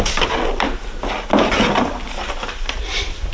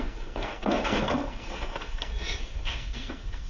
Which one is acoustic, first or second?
first